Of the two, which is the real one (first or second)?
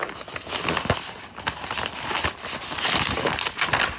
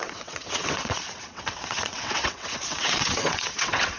first